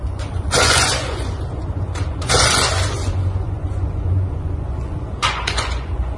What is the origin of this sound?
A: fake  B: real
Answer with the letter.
A